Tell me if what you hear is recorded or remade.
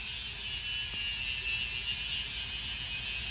recorded